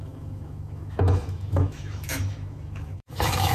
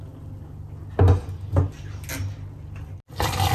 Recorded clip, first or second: second